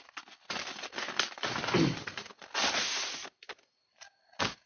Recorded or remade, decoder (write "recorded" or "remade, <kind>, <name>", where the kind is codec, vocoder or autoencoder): recorded